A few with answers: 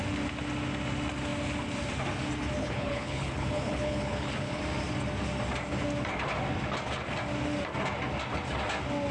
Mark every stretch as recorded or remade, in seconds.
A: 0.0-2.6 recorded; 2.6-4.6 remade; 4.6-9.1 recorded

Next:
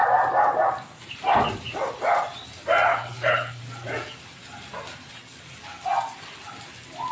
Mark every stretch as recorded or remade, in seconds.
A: 0.0-2.9 recorded; 2.9-3.6 remade; 3.6-7.1 recorded

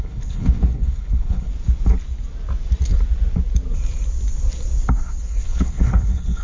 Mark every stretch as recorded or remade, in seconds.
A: 0.0-1.5 remade; 1.5-5.2 recorded; 5.2-6.4 remade

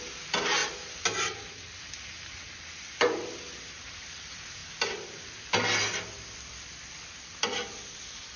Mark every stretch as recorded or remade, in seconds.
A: 0.0-8.4 recorded

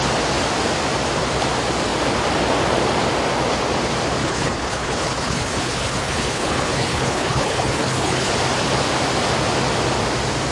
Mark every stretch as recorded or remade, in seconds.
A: 0.0-4.2 recorded; 4.2-8.3 remade; 8.3-10.5 recorded

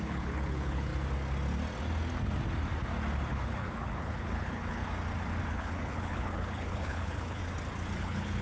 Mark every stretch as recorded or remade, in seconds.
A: 0.0-0.9 remade; 0.9-3.3 recorded; 3.3-4.8 remade; 4.8-5.5 recorded; 5.5-7.4 remade; 7.4-8.0 recorded; 8.0-8.4 remade

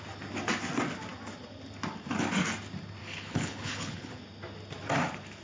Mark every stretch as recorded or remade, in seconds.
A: 0.0-3.0 recorded; 3.0-4.2 remade; 4.2-5.4 recorded

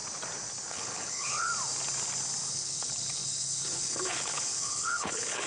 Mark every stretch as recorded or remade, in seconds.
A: 0.0-0.7 recorded; 0.7-1.5 remade; 1.5-2.5 recorded; 2.5-5.5 remade